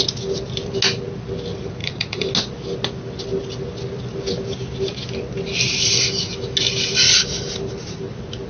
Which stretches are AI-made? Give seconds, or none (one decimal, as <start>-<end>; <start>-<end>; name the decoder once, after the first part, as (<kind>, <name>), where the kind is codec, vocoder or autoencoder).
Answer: 1.8-2.3 (vocoder, Vocos)